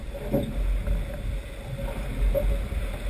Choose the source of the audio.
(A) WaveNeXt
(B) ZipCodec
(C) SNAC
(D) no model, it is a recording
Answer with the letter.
D